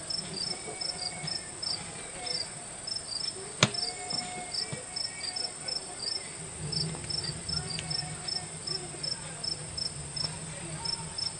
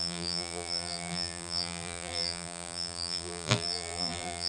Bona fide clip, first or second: first